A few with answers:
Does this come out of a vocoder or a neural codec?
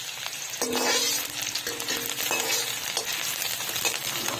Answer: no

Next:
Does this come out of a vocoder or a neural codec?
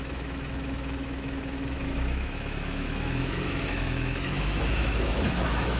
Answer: yes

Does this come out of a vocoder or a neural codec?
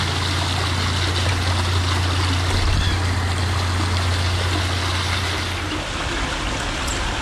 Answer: no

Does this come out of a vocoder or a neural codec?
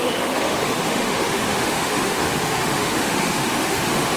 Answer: yes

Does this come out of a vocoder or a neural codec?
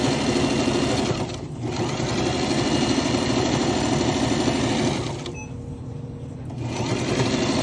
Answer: no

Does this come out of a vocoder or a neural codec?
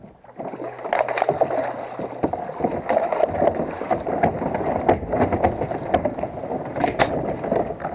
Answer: no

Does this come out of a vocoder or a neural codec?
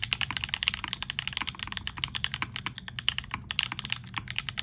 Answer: no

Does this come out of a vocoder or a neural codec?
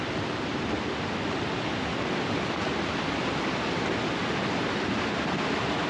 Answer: no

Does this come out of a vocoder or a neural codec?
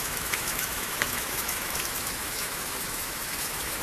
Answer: yes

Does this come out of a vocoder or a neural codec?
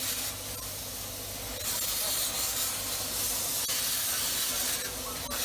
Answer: no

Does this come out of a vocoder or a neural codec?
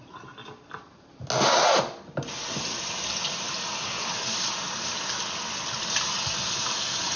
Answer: no